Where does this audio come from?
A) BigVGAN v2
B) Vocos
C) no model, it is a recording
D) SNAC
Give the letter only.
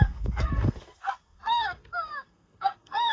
D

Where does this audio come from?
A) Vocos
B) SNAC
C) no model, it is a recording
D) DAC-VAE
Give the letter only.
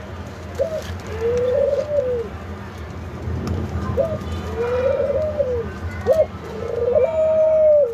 C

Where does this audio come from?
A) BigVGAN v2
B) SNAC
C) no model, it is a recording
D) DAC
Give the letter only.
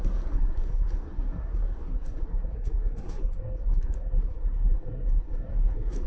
B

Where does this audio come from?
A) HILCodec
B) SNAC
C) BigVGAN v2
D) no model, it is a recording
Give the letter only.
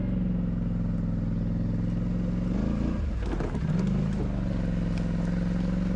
D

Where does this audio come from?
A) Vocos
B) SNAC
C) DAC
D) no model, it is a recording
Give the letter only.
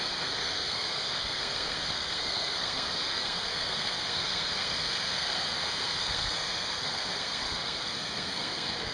B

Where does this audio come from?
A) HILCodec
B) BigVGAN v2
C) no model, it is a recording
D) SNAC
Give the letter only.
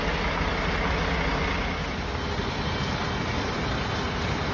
C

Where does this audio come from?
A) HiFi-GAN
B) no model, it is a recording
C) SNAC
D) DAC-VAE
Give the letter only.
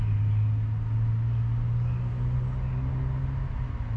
B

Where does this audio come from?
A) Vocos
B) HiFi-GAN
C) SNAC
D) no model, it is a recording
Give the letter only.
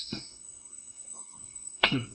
C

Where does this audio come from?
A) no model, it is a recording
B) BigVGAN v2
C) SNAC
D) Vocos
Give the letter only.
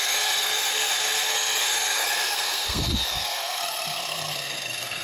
C